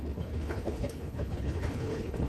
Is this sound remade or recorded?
remade